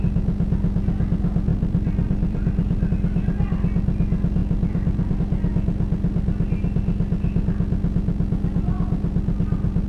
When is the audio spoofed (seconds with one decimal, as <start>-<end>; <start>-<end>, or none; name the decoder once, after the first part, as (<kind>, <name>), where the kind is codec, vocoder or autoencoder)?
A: 1.5-2.9 (vocoder, BigVGAN v2); 4.4-5.2